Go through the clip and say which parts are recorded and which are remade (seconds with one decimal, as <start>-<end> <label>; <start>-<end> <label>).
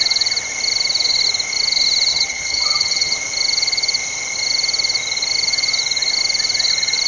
0.0-2.1 recorded; 2.1-3.2 remade; 3.2-7.1 recorded